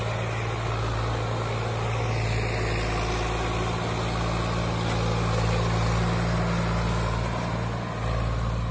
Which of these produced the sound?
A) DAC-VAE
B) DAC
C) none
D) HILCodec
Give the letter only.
C